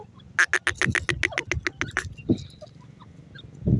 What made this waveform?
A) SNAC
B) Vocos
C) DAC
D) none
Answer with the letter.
D